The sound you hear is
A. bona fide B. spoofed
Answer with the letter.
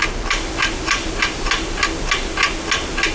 A